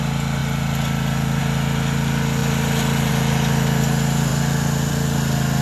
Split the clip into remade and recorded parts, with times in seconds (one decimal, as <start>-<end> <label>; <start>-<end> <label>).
0.0-5.6 recorded